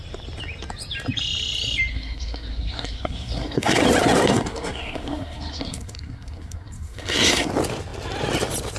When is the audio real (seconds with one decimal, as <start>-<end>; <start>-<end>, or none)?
0.0-1.9; 3.8-4.3; 7.5-8.8